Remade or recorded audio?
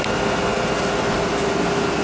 recorded